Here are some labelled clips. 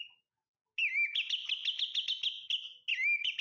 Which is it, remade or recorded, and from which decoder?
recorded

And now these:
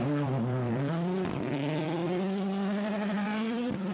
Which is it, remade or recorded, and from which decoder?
remade, vocoder, BigVGAN v2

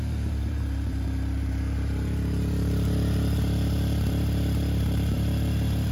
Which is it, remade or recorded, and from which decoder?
remade, vocoder, BigVGAN v2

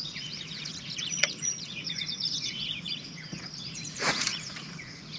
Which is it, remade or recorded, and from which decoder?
remade, vocoder, Vocos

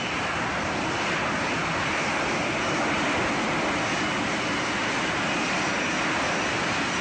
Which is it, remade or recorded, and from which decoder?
recorded